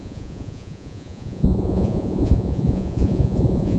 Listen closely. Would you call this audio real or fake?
fake